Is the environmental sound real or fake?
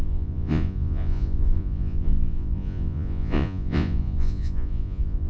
fake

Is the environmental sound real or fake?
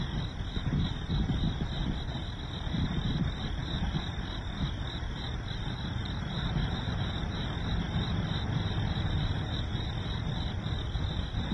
real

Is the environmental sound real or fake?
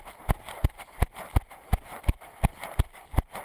real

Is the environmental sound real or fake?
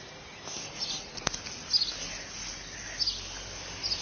real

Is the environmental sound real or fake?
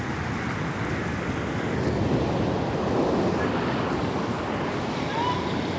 real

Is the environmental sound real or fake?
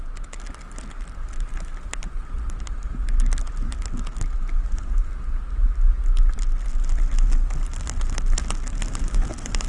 real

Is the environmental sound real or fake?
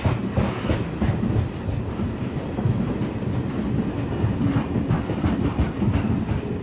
real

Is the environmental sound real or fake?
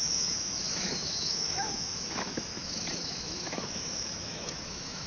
fake